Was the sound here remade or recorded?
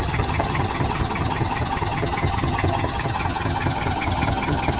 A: remade